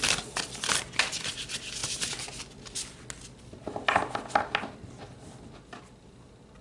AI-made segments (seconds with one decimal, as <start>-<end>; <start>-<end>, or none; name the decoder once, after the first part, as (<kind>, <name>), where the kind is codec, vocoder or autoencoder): none